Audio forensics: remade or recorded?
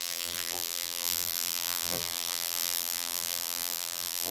remade